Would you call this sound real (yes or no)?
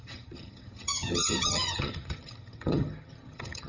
no